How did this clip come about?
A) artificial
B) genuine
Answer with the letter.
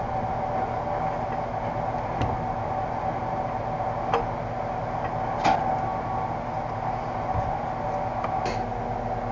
B